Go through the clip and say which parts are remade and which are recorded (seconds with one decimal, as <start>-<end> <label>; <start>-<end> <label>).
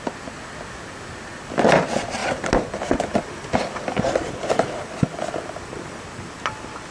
0.0-2.2 recorded; 2.2-6.0 remade; 6.0-6.9 recorded